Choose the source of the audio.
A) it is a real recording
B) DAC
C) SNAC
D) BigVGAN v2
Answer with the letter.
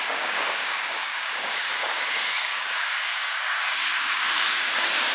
B